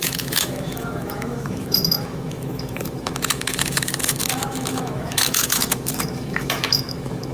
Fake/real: fake